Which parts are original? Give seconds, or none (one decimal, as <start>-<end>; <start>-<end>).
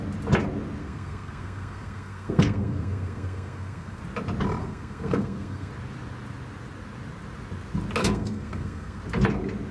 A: 0.0-0.8; 4.0-4.6; 5.7-8.0; 9.0-9.7